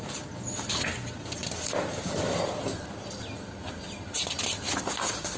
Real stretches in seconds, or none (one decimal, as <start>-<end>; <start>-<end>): 0.0-5.4